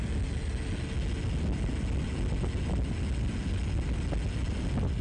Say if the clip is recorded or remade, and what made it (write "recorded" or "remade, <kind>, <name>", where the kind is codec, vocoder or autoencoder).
recorded